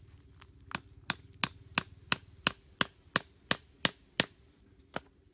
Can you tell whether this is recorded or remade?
recorded